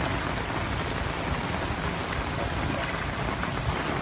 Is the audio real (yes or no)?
yes